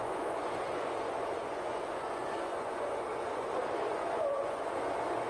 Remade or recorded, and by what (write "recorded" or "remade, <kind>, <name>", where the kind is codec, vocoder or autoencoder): remade, vocoder, Vocos